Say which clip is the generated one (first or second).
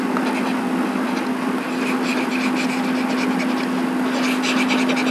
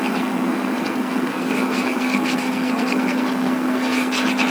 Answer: second